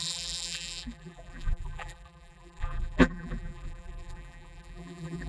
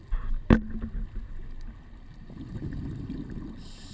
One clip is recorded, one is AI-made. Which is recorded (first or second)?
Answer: second